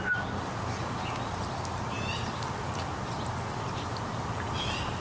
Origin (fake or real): real